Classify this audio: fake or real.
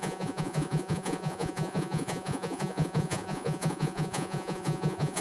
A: fake